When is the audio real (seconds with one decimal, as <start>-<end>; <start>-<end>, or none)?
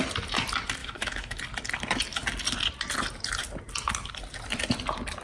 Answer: 0.0-0.8; 1.4-5.2